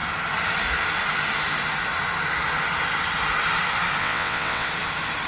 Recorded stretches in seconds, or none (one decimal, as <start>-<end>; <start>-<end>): 0.0-4.0; 4.7-5.3

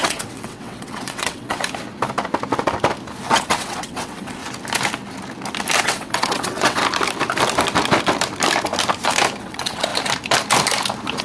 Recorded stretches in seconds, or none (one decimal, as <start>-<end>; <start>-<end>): 1.6-3.2; 4.4-5.8; 6.8-9.4; 9.9-11.2

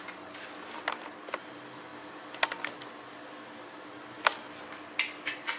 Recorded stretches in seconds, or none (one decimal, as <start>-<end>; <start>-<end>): 0.0-5.6

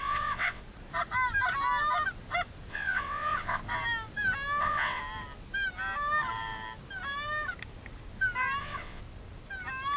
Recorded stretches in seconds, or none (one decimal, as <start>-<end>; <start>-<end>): 0.6-2.7; 3.6-4.6; 5.0-8.6; 9.0-10.0

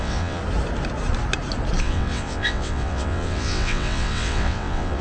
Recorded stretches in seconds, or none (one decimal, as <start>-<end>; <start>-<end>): 0.4-1.8

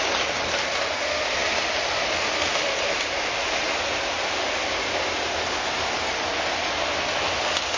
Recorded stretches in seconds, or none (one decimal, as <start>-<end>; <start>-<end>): 0.0-7.8